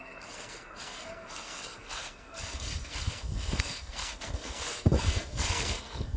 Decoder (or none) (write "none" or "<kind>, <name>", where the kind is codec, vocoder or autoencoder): codec, SNAC